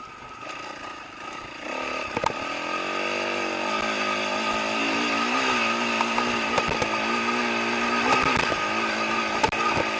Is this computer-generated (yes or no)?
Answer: no